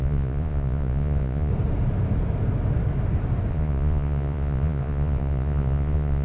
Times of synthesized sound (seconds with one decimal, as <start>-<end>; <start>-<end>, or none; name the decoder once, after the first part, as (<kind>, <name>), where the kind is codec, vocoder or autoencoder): 0.0-1.5 (vocoder, Vocos); 3.5-6.2